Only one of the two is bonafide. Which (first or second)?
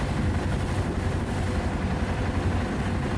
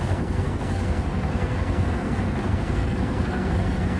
first